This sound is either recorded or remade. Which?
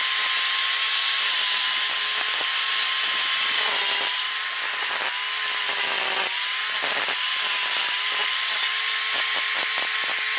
recorded